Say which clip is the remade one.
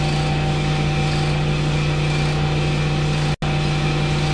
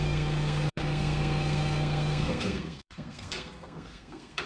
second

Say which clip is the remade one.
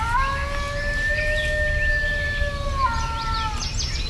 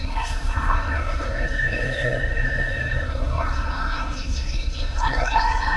second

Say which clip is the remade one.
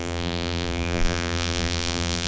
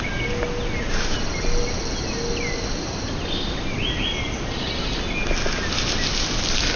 first